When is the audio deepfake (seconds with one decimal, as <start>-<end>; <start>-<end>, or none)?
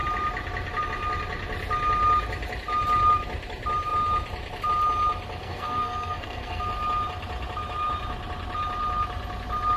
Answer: 5.4-6.7